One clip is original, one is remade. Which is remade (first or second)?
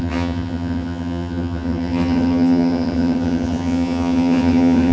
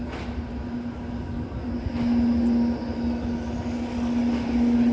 first